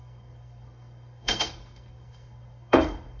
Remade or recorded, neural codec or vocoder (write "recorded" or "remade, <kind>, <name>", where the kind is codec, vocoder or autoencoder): remade, codec, SNAC